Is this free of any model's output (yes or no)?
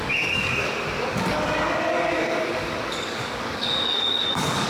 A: no